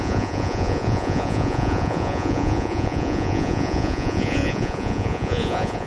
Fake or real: fake